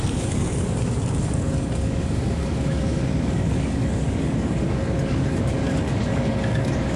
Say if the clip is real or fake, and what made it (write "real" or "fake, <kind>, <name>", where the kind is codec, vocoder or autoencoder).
fake, codec, DAC